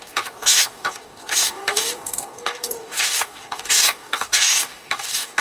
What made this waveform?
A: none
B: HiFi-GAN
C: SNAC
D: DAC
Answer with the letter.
D